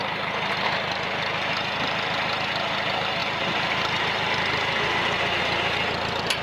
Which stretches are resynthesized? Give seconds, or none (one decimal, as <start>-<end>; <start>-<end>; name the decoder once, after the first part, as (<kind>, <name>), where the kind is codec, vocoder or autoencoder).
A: none